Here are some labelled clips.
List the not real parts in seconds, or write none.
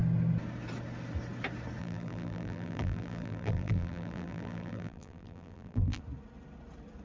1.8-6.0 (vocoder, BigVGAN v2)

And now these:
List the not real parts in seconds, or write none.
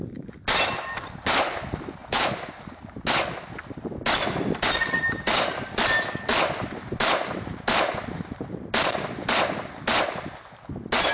2.0-2.6 (vocoder, BigVGAN v2); 6.3-7.9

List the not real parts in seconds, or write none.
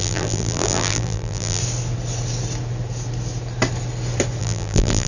0.0-1.6 (vocoder, BigVGAN v2); 4.4-5.1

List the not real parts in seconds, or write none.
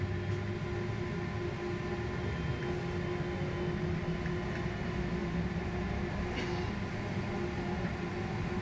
5.2-6.1 (vocoder, BigVGAN v2)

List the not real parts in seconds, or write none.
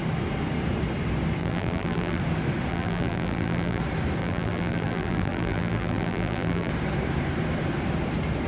1.4-2.2 (vocoder, BigVGAN v2); 2.7-3.8; 4.2-6.7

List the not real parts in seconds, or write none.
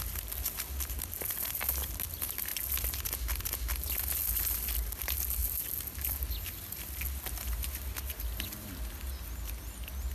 none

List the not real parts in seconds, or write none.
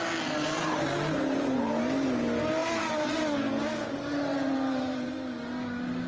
2.6-3.2 (vocoder, BigVGAN v2); 4.3-5.1